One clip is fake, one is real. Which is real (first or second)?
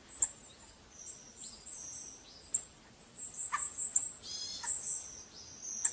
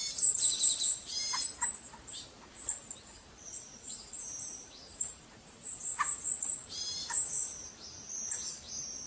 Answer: first